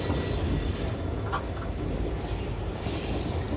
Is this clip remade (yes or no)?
no